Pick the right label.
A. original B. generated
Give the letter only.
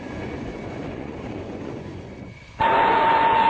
B